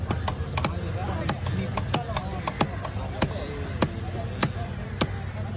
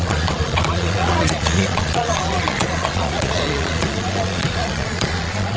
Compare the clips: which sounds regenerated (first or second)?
second